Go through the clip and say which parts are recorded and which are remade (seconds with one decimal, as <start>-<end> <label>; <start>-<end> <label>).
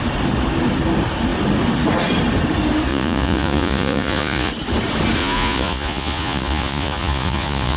0.0-2.9 recorded; 2.9-4.5 remade; 4.5-5.2 recorded; 5.2-7.8 remade